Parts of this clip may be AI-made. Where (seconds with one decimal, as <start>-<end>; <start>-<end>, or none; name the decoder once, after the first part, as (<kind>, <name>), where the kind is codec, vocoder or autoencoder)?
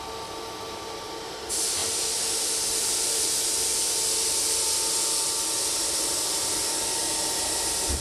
none